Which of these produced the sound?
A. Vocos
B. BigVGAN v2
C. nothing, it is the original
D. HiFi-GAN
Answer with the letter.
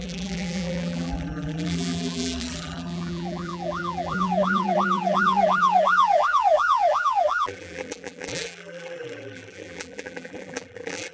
B